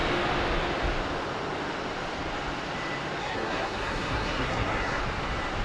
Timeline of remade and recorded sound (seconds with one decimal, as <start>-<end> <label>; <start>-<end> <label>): 0.0-3.2 recorded; 3.2-5.0 remade; 5.0-5.6 recorded